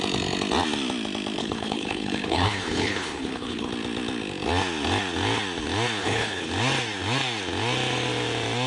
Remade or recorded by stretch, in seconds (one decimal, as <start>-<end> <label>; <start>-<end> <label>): 0.0-1.4 recorded; 1.4-3.7 remade; 3.7-6.0 recorded; 6.0-6.5 remade; 6.5-8.7 recorded